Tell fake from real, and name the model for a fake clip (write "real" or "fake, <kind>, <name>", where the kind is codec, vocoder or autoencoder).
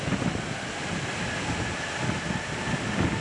real